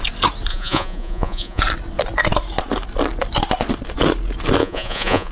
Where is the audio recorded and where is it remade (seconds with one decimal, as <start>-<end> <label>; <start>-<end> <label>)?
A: 0.0-0.5 recorded; 0.5-1.6 remade; 1.6-4.6 recorded; 4.6-5.3 remade